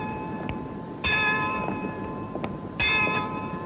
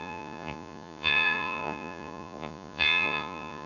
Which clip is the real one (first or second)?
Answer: first